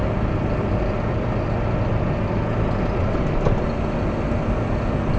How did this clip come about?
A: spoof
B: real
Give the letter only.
B